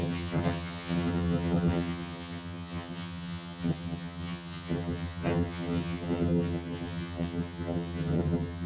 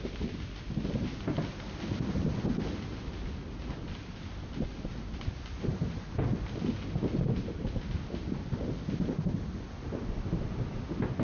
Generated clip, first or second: first